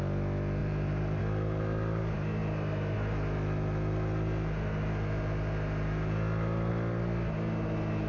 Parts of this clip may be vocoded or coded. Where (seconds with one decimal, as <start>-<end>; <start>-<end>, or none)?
0.6-1.2